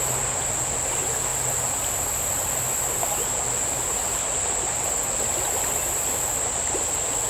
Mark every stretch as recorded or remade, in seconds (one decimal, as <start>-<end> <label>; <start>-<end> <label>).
0.0-7.3 recorded